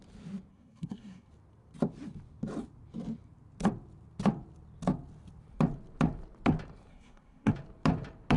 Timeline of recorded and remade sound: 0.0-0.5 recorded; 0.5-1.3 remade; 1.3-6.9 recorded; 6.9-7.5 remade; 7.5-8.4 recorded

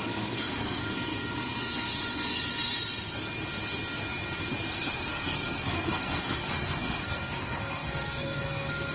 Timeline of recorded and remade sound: 0.0-0.8 remade; 0.8-4.7 recorded; 4.7-8.9 remade

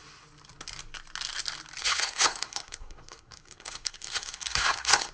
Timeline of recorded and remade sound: 0.0-1.8 recorded; 1.8-5.1 remade

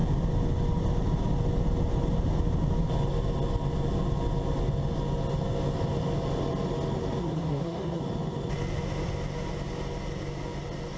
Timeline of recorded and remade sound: 0.0-7.2 recorded; 7.2-8.0 remade; 8.0-11.0 recorded